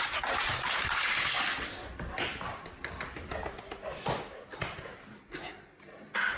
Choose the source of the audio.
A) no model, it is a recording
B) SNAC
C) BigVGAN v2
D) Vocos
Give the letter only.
A